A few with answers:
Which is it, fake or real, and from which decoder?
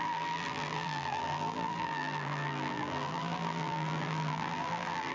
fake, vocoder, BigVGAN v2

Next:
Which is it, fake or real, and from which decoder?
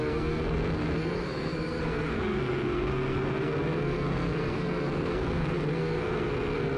fake, codec, SNAC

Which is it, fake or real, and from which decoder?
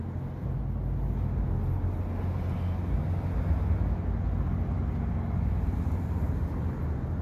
real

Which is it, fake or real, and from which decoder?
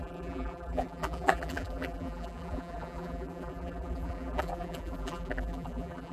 fake, vocoder, BigVGAN v2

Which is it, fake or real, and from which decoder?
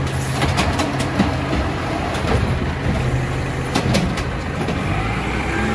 real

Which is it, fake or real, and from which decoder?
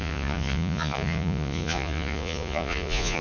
fake, vocoder, Vocos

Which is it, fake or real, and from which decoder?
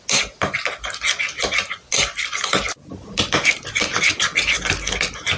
real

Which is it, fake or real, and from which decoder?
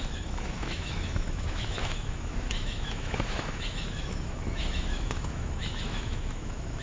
fake, autoencoder, DAC-VAE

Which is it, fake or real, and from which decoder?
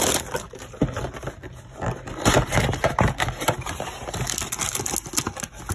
real